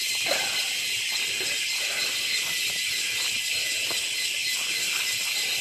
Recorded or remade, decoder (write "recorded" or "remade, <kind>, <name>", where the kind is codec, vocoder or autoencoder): recorded